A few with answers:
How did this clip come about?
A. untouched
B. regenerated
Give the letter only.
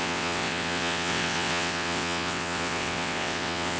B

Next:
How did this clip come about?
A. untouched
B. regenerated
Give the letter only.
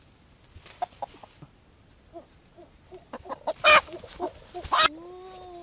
A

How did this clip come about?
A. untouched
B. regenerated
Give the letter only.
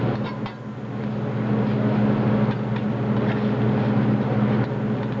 A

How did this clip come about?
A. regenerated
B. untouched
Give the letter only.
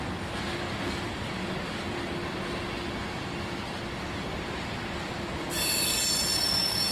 B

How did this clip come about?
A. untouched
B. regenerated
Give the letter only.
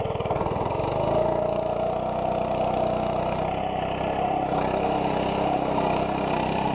A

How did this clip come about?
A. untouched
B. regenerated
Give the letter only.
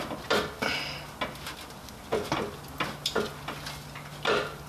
A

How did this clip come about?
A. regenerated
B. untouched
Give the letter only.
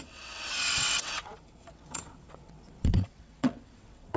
A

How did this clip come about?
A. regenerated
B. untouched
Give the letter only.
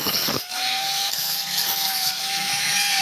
A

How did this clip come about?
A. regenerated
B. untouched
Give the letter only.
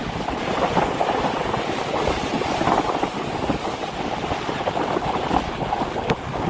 B